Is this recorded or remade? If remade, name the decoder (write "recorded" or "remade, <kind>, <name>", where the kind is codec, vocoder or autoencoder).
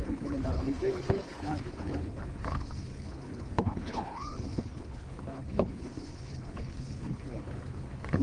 remade, codec, HILCodec